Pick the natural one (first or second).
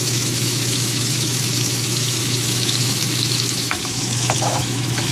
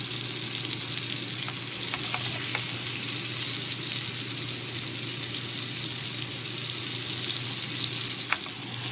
second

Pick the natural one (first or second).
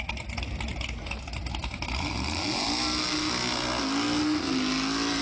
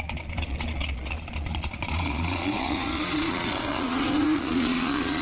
first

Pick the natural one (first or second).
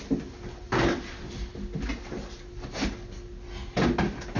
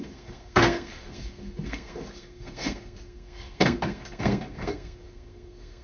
first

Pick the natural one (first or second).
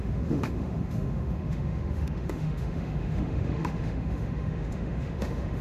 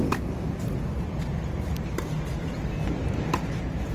second